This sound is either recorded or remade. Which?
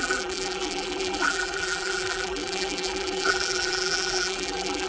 remade